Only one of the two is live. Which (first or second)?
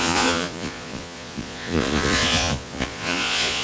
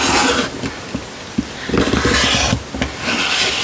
second